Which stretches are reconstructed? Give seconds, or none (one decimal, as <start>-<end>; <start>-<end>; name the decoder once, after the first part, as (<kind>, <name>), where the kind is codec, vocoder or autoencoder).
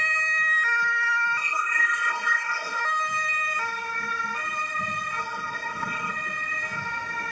1.4-2.8 (codec, SNAC); 5.2-6.1